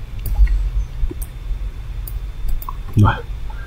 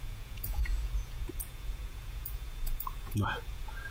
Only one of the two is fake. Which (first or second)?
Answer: second